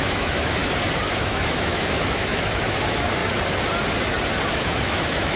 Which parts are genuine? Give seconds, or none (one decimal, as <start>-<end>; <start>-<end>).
0.6-1.1; 3.2-4.5